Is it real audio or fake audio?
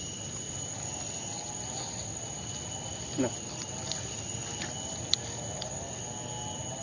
real